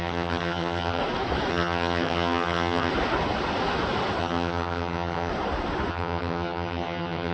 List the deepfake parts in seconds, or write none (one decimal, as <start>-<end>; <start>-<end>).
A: 0.0-1.0; 1.5-2.9; 4.2-5.3; 5.9-7.3